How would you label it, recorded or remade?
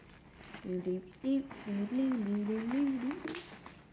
recorded